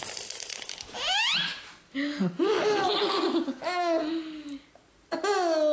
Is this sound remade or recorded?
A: recorded